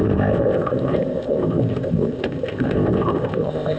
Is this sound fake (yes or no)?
yes